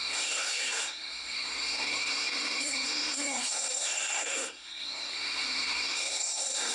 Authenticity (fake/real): fake